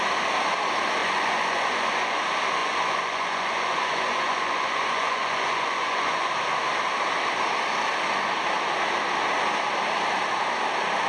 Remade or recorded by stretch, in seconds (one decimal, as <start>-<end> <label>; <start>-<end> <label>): 0.0-1.0 recorded; 1.0-2.2 remade; 2.2-2.6 recorded; 2.6-6.3 remade; 6.3-11.1 recorded

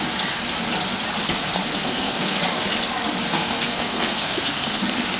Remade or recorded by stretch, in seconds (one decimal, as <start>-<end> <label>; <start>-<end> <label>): 0.0-1.7 recorded; 1.7-2.4 remade; 2.4-3.3 recorded; 3.3-4.8 remade; 4.8-5.2 recorded

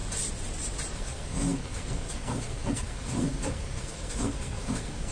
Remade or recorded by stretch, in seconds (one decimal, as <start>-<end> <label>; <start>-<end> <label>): 0.0-0.9 recorded; 0.9-5.1 remade

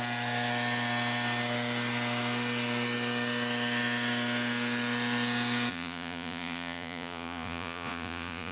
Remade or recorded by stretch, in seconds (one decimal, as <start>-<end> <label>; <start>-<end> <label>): 0.0-5.7 recorded; 5.7-8.5 remade

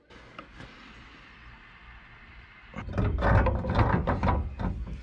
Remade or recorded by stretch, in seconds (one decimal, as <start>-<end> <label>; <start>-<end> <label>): 0.0-1.8 recorded; 1.8-4.3 remade; 4.3-5.0 recorded

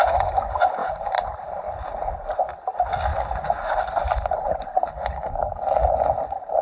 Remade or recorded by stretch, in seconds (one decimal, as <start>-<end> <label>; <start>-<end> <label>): 0.0-0.8 recorded; 0.8-1.6 remade; 1.6-3.1 recorded; 3.1-4.9 remade; 4.9-6.6 recorded

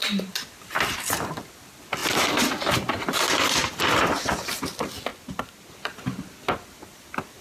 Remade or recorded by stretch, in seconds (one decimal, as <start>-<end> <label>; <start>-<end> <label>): 0.0-7.4 recorded

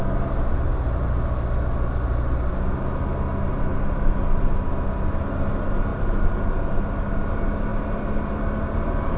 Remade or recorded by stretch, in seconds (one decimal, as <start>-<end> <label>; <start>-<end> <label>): 0.0-9.2 recorded